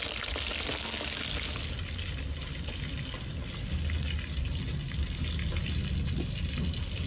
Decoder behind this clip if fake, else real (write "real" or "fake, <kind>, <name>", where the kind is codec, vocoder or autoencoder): real